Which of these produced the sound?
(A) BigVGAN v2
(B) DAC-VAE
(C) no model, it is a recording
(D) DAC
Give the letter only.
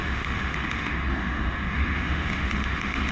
B